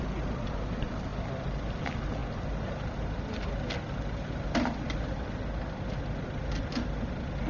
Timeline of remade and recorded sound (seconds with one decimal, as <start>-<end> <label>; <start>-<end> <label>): 0.0-7.5 recorded